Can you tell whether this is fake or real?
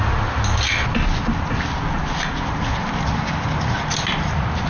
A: real